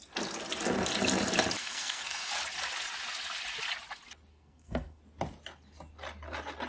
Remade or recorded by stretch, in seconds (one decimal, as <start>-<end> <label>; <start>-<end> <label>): 0.0-1.6 recorded; 1.6-2.3 remade; 2.3-4.3 recorded; 4.3-5.0 remade; 5.0-6.7 recorded

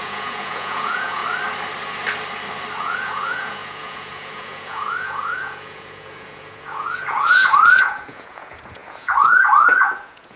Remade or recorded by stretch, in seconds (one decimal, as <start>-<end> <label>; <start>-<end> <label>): 0.0-1.2 remade; 1.2-2.8 recorded; 2.8-10.4 remade

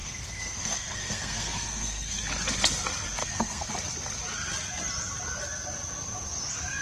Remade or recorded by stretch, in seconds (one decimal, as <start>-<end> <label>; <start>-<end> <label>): 0.0-2.2 remade; 2.2-3.2 recorded; 3.2-3.7 remade; 3.7-6.8 recorded

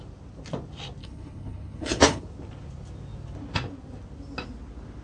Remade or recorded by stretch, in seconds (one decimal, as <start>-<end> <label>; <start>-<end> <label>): 0.0-1.0 recorded; 1.0-2.2 remade; 2.2-5.0 recorded

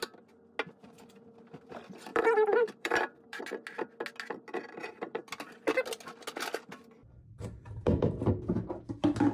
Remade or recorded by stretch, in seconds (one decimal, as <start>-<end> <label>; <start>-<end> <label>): 0.0-2.1 recorded; 2.1-3.4 remade; 3.4-4.8 recorded; 4.8-5.3 remade; 5.3-7.0 recorded; 7.0-8.1 remade; 8.1-9.3 recorded